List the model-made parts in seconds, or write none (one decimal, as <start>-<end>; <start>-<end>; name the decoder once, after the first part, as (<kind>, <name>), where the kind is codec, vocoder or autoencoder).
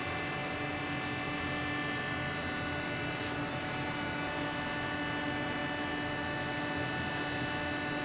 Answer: none